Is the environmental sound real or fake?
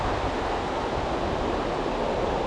real